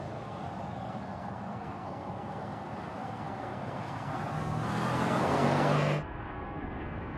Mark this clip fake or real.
fake